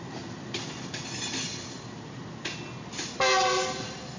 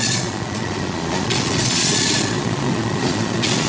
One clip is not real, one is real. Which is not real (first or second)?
second